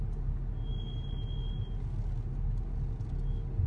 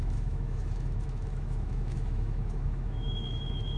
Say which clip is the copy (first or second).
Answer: second